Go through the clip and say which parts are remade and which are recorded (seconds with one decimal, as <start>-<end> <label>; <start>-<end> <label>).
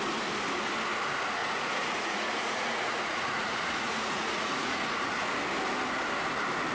0.0-1.4 recorded; 1.4-5.1 remade; 5.1-6.7 recorded